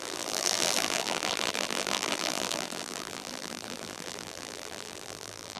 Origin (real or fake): fake